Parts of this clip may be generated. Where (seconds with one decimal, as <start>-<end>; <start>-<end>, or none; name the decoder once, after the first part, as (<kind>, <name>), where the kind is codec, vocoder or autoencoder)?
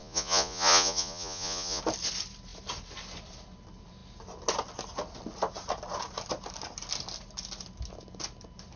0.0-1.8 (vocoder, Vocos)